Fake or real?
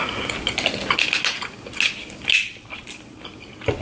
real